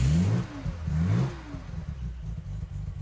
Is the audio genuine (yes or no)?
yes